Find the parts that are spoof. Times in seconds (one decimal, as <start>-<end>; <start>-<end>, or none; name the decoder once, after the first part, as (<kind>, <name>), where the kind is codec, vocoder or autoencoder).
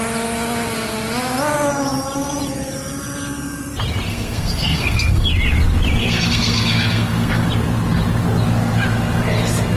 4.1-5.3 (codec, SNAC); 6.0-7.5